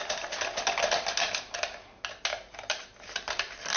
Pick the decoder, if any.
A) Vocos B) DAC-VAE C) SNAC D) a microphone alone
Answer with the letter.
D